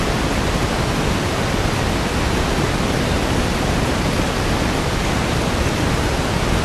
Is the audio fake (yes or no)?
no